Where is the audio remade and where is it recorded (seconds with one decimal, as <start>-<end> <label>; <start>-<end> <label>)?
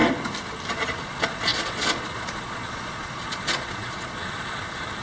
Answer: 0.0-0.7 recorded; 0.7-5.0 remade